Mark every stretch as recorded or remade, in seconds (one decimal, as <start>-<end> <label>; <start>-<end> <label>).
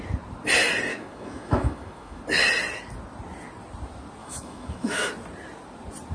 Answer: 0.0-0.9 recorded; 0.9-2.2 remade; 2.2-4.2 recorded; 4.2-5.1 remade; 5.1-6.1 recorded